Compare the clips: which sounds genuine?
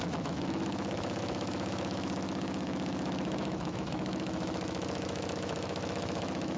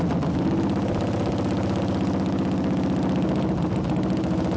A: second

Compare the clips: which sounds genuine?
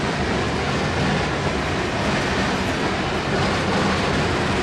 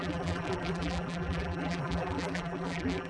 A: first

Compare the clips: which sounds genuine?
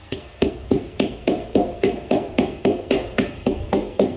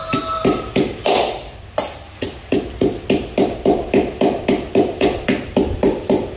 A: second